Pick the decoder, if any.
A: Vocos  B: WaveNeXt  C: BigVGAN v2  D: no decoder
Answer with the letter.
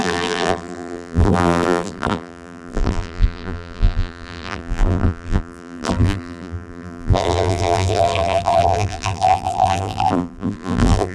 C